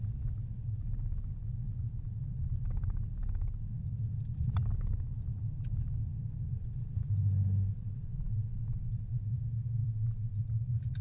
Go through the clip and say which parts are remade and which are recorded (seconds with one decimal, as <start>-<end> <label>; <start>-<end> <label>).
0.0-7.7 recorded; 7.7-9.3 remade; 9.3-9.8 recorded; 9.8-10.4 remade; 10.4-11.0 recorded